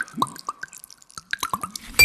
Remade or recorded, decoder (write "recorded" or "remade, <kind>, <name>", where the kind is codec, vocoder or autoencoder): recorded